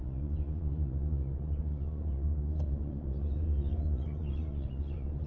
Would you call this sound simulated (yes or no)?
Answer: yes